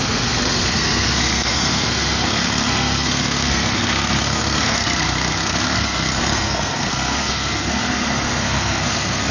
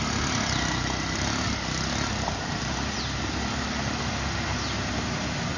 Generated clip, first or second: first